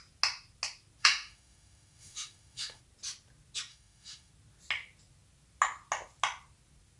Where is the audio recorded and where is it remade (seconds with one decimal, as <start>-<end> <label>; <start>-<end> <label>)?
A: 0.0-1.0 recorded; 1.0-2.8 remade; 2.8-3.7 recorded; 3.7-4.3 remade; 4.3-7.0 recorded